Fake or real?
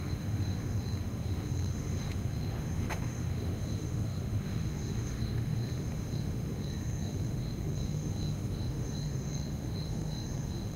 fake